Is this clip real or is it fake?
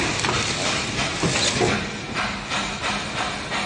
real